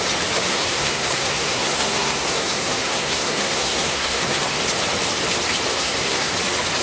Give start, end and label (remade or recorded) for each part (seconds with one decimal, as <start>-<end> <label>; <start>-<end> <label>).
0.0-0.5 recorded; 0.5-4.6 remade; 4.6-5.7 recorded; 5.7-6.3 remade; 6.3-6.8 recorded

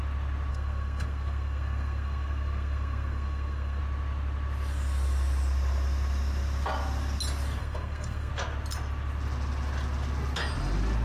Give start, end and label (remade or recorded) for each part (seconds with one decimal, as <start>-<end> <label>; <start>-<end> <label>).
0.0-0.5 recorded; 0.5-3.8 remade; 3.8-7.6 recorded; 7.6-8.3 remade; 8.3-11.0 recorded

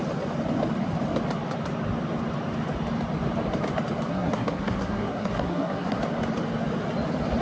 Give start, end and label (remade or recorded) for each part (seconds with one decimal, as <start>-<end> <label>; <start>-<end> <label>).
0.0-4.1 recorded; 4.1-6.0 remade; 6.0-7.4 recorded

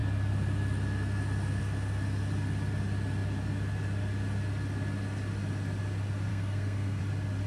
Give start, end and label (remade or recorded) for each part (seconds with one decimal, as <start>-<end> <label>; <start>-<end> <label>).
0.0-6.3 recorded; 6.3-7.0 remade; 7.0-7.5 recorded

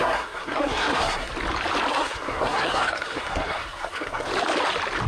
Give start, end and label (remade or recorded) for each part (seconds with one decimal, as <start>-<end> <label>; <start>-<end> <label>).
0.0-1.3 remade; 1.3-1.9 recorded; 1.9-4.3 remade; 4.3-5.1 recorded

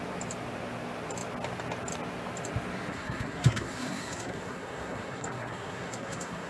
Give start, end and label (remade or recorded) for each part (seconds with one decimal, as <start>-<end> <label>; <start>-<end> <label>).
0.0-2.9 recorded; 2.9-6.5 remade

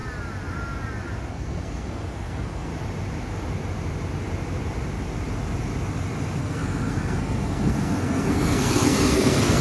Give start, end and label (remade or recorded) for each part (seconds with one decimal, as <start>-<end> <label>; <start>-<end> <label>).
0.0-1.3 recorded; 1.3-2.7 remade; 2.7-6.4 recorded; 6.4-9.6 remade